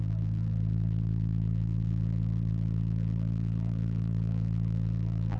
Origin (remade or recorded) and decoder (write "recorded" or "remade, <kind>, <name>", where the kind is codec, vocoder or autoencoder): remade, vocoder, BigVGAN v2